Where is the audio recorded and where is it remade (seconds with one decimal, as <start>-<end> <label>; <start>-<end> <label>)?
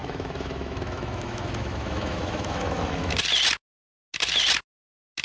0.0-3.1 remade; 3.1-5.2 recorded